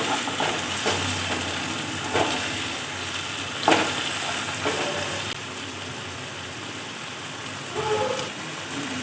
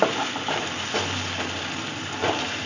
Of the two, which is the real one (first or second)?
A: first